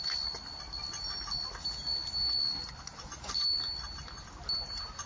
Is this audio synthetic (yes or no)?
no